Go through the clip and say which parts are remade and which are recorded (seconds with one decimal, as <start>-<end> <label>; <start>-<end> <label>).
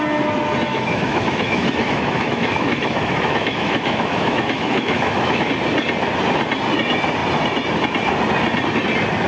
0.0-0.7 recorded; 0.7-5.5 remade; 5.5-9.3 recorded